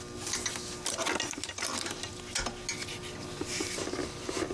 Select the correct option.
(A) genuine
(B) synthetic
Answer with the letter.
A